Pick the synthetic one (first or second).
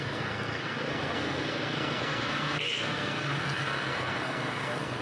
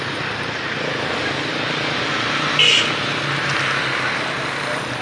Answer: first